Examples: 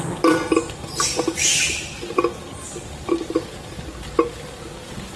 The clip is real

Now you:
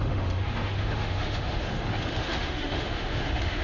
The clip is fake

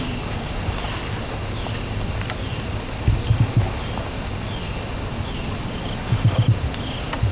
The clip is real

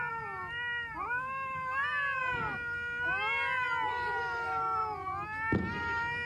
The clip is real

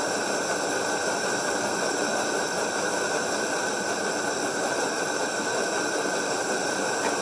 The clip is real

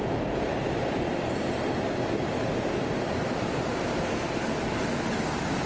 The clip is real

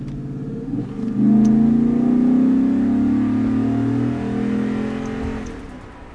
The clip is real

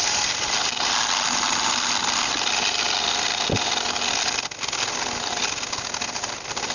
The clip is real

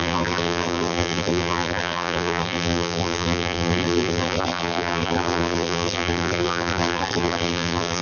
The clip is fake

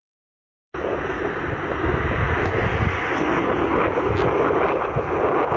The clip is real